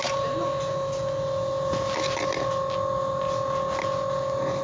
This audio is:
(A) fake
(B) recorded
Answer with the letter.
B